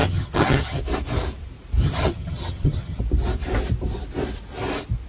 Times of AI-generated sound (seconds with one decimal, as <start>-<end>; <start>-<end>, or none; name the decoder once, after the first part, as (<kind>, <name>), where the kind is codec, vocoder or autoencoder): 0.0-0.8 (vocoder, HiFi-GAN); 1.8-3.0